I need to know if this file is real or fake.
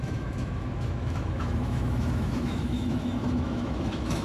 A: fake